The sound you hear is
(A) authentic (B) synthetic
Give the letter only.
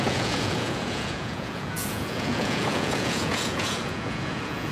B